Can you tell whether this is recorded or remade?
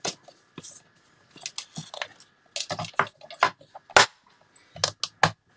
recorded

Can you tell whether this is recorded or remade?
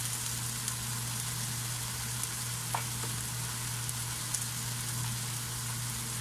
recorded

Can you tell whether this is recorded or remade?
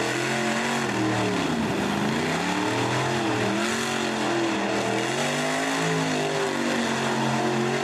recorded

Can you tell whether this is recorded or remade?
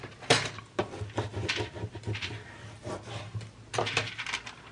recorded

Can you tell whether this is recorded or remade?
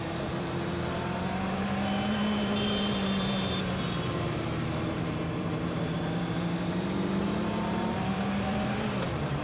remade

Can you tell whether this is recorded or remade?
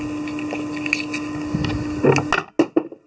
recorded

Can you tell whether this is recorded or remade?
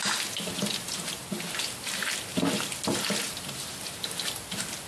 recorded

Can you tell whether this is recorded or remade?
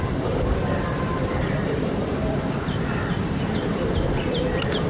remade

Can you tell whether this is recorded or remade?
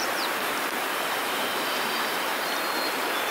remade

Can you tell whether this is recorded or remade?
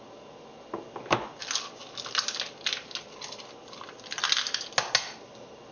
recorded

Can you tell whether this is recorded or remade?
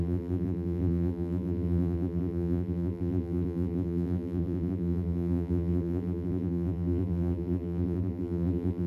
remade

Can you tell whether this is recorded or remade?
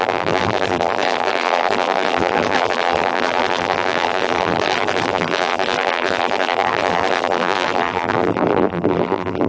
remade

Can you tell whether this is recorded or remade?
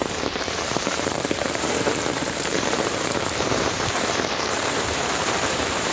remade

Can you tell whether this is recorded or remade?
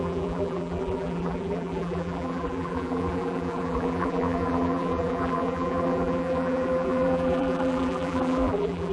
remade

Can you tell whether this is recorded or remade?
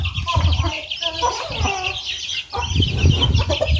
recorded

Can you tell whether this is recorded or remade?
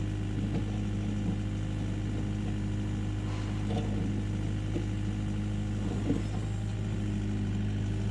recorded